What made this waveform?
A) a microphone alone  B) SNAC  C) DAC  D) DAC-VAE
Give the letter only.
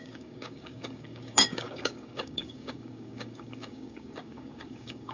C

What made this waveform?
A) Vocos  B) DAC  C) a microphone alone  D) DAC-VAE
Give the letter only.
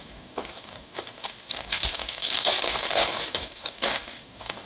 B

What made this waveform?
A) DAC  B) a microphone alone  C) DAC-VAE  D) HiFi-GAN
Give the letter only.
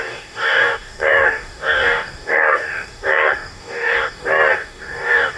A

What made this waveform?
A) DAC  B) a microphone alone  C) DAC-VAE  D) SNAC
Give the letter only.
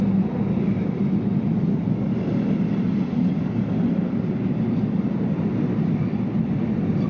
B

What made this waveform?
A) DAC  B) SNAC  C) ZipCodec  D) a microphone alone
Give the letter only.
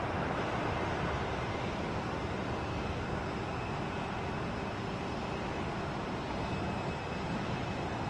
D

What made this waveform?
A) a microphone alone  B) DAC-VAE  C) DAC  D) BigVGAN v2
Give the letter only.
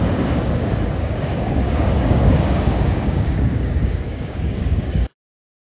C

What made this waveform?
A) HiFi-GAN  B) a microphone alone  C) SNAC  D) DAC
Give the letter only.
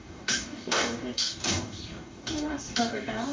D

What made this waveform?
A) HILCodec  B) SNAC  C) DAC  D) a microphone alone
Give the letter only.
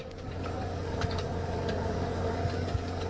C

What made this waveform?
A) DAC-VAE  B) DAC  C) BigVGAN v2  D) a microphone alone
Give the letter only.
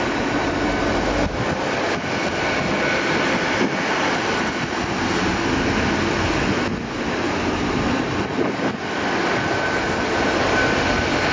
D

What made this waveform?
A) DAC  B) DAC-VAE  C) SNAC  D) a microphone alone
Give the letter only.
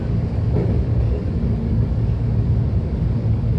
A